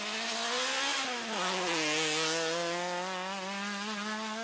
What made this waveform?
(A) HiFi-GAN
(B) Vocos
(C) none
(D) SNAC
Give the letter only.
C